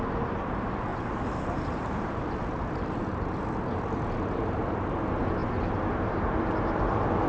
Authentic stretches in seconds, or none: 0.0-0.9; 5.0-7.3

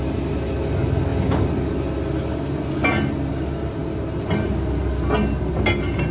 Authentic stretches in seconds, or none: 0.0-6.1

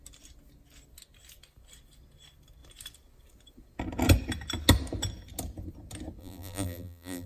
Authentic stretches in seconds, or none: 0.0-6.2

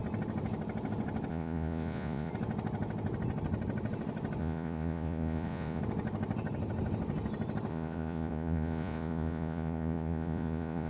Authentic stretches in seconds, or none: 0.0-1.3; 2.3-4.4; 5.8-7.7

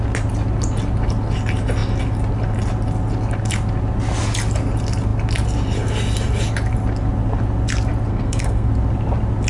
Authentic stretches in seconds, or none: 0.0-8.1; 8.7-9.5

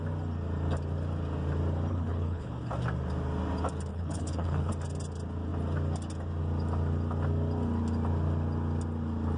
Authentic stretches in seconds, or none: 0.0-1.9; 2.7-3.9; 4.7-9.4